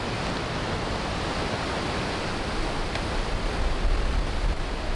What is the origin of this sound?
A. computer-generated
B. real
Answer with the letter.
B